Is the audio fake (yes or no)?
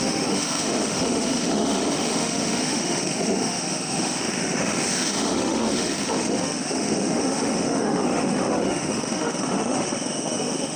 yes